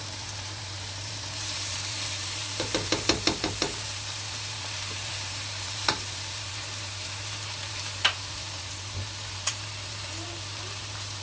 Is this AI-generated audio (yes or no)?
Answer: yes